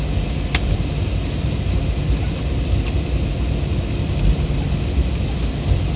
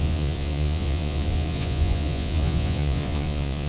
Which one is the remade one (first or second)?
second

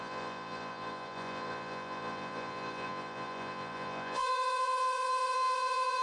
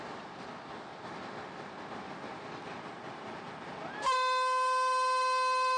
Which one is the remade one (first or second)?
first